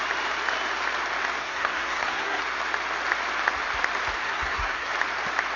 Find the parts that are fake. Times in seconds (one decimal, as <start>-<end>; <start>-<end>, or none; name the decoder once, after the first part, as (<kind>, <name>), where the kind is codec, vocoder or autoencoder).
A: 1.4-2.4 (codec, SNAC); 4.2-4.9